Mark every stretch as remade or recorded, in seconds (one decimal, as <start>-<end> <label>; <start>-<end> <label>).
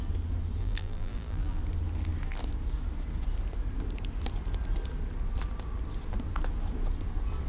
0.0-0.6 recorded; 0.6-1.6 remade; 1.6-7.5 recorded